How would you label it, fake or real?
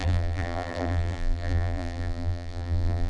fake